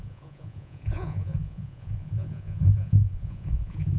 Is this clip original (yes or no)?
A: no